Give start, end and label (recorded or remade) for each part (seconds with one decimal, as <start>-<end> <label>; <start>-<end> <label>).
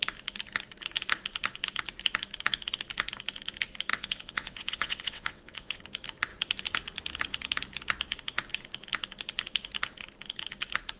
0.0-3.9 recorded; 3.9-5.8 remade; 5.8-11.0 recorded